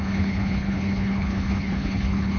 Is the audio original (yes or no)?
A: no